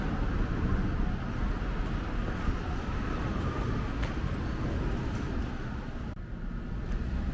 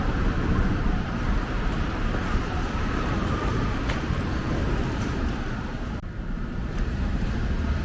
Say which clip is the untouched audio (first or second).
first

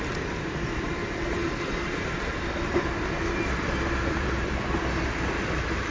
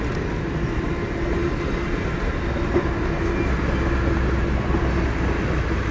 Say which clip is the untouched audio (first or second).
second